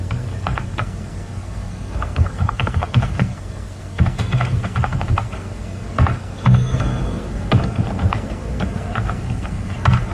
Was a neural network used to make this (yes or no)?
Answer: yes